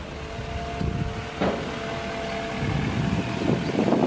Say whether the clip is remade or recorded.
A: recorded